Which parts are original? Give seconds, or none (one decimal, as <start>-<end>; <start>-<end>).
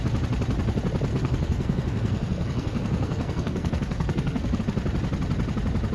0.0-1.1; 4.6-5.9